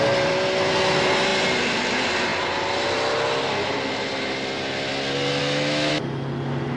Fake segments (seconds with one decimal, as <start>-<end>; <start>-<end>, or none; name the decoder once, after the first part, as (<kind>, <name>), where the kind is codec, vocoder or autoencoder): 5.4-5.9 (autoencoder, DAC-VAE)